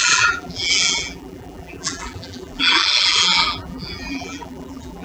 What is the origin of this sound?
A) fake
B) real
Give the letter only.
A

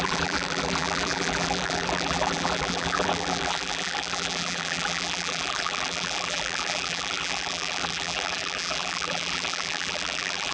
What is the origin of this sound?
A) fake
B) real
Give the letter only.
A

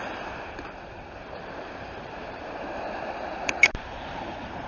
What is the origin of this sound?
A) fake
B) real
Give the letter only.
A